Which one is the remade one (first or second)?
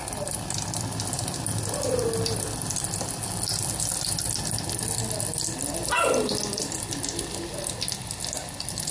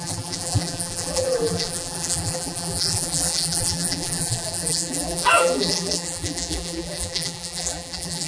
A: second